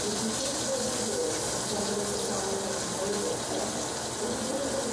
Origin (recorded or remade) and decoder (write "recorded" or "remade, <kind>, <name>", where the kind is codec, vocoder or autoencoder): recorded